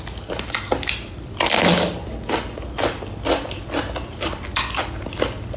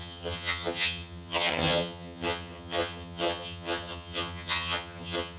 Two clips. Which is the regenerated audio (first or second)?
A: second